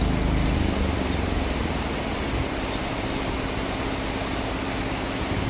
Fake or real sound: real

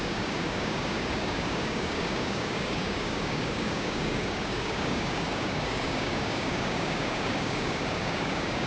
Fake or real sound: fake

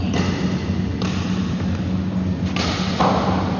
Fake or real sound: real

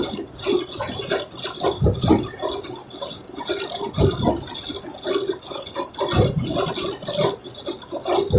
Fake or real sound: real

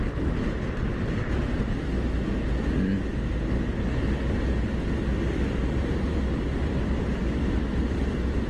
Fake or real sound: real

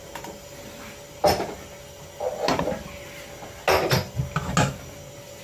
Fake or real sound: real